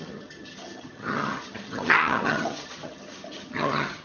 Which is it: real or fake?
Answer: fake